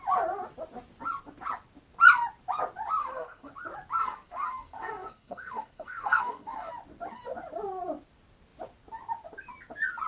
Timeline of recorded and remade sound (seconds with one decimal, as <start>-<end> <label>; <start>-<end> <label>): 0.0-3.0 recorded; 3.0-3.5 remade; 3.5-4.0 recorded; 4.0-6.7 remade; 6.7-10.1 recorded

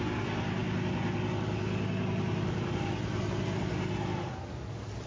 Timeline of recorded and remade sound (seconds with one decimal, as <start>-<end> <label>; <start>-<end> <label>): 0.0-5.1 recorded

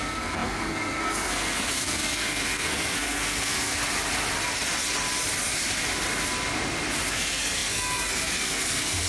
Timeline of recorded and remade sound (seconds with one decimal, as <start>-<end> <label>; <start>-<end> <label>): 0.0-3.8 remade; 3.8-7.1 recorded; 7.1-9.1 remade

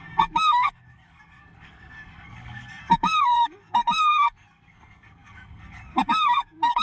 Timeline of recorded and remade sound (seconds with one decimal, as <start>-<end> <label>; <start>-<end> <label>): 0.0-6.8 remade